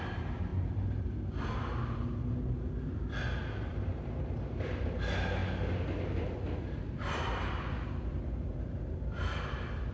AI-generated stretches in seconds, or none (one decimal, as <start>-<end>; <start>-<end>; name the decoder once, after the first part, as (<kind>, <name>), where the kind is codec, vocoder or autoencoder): none